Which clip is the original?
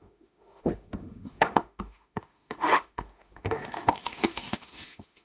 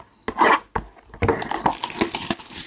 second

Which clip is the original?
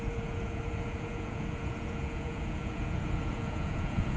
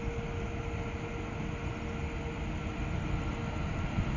second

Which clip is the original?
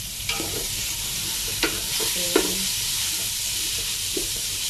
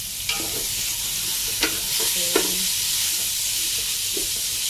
second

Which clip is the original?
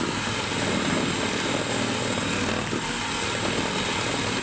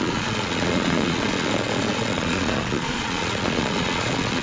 first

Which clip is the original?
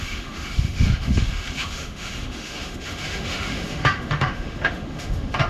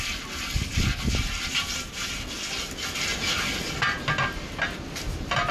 second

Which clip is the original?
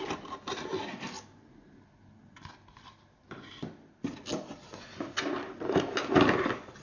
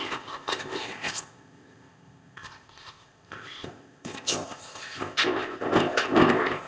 first